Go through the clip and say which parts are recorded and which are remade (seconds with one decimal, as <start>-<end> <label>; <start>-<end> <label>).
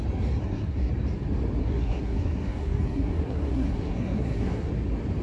0.0-0.4 recorded; 0.4-0.9 remade; 0.9-1.6 recorded; 1.6-4.7 remade; 4.7-5.2 recorded